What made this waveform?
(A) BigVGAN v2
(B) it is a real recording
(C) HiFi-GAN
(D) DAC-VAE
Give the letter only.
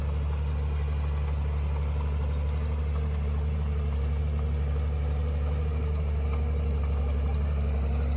B